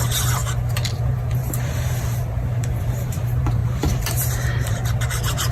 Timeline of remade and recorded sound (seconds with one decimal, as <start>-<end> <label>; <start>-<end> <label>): 0.0-0.4 remade; 0.4-0.9 recorded; 0.9-5.5 remade